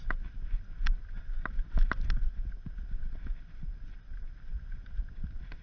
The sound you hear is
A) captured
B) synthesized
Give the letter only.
A